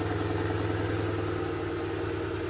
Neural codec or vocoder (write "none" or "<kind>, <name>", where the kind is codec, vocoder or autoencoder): none